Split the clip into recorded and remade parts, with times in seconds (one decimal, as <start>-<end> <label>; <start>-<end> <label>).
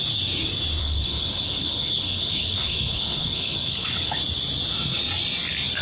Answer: 0.0-0.8 recorded; 0.8-4.2 remade; 4.2-5.8 recorded